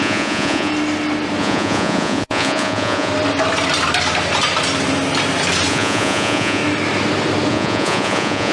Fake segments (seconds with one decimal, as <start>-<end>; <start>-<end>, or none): 0.0-0.7; 1.4-3.1; 5.7-6.6; 7.5-8.5